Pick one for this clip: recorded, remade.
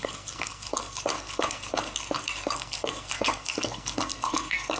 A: remade